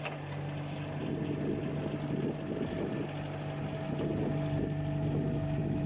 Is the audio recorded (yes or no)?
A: yes